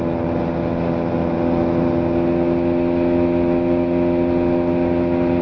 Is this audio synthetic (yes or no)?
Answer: no